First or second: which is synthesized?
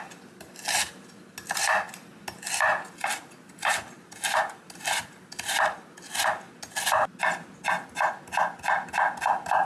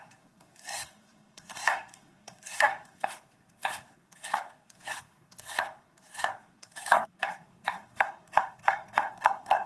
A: second